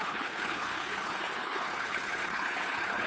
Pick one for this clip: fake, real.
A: fake